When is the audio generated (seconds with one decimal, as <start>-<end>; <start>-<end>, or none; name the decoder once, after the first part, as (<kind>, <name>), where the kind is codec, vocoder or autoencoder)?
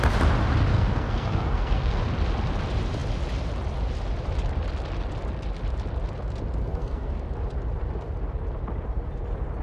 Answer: 0.7-2.0 (codec, SNAC); 6.6-7.1